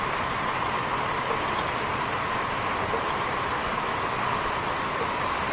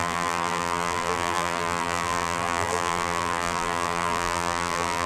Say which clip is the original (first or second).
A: first